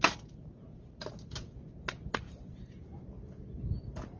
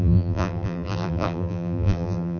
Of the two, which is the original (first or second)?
first